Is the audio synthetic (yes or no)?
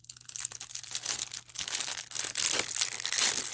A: no